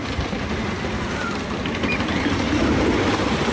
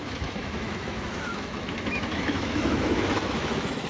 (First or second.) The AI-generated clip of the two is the second